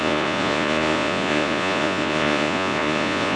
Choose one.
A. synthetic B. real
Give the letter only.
A